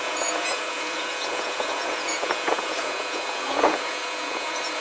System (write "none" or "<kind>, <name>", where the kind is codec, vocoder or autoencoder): vocoder, Vocos